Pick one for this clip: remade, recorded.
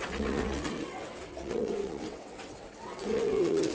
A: remade